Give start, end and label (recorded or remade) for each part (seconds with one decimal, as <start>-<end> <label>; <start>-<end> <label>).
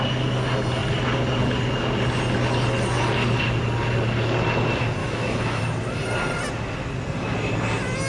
0.0-5.0 recorded; 5.0-5.6 remade; 5.6-8.1 recorded